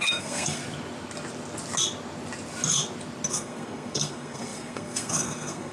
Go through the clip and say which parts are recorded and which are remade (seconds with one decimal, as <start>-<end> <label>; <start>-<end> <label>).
0.0-0.6 remade; 0.6-3.3 recorded; 3.3-5.7 remade